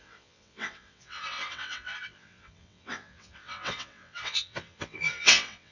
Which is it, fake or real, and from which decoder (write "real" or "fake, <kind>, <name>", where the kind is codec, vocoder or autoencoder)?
fake, vocoder, WaveNeXt